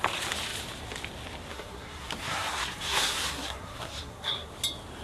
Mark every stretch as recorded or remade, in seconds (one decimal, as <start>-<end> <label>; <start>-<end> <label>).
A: 0.0-1.5 recorded; 1.5-4.5 remade; 4.5-5.0 recorded